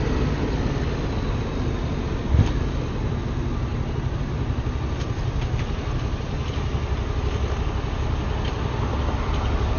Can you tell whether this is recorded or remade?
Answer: recorded